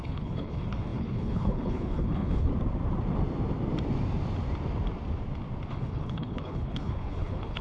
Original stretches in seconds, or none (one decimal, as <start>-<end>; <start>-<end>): 2.5-5.7